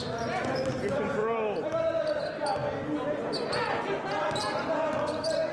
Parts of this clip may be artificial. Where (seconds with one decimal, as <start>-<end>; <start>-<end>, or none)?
none